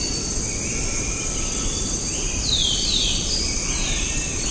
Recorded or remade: remade